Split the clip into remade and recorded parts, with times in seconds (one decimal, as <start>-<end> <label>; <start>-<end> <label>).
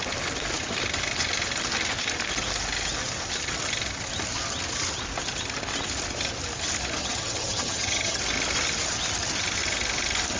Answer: 0.0-7.0 recorded; 7.0-8.2 remade; 8.2-10.4 recorded